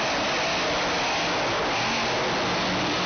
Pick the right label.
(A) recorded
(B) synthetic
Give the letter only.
A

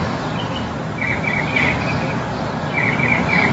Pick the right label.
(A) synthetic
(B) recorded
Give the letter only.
A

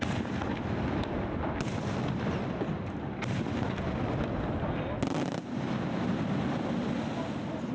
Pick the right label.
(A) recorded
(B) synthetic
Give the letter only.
A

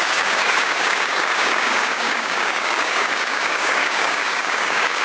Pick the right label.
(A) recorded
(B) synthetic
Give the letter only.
B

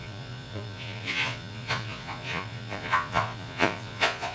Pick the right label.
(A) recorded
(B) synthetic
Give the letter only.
B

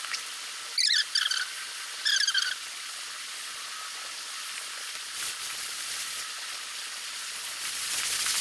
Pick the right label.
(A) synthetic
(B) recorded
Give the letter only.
B